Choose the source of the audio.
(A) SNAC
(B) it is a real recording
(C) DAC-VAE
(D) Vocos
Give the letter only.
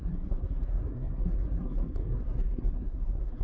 A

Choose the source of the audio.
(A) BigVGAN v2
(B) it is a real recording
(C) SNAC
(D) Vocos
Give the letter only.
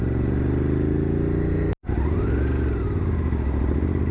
B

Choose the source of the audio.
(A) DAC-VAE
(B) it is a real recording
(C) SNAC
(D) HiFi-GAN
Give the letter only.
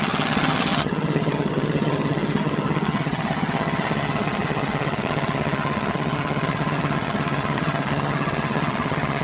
D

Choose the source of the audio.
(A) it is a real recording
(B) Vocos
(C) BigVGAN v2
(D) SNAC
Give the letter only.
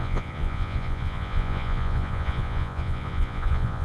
B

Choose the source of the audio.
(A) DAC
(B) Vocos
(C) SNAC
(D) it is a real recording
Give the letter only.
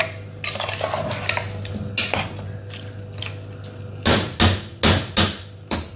D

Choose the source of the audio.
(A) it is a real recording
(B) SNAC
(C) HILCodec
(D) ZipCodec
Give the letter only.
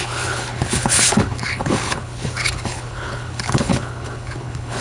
C